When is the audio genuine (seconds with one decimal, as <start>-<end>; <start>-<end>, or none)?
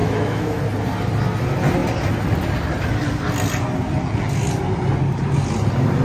0.6-6.0